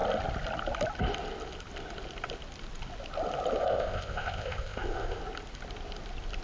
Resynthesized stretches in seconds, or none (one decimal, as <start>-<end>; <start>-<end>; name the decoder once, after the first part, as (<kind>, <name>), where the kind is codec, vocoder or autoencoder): 3.6-5.2 (codec, ZipCodec)